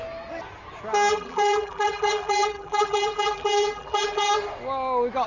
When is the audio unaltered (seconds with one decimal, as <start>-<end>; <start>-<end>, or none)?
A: 0.0-1.1; 4.3-5.3